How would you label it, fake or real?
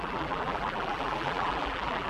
fake